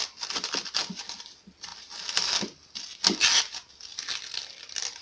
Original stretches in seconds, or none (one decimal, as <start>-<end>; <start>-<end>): 0.0-5.0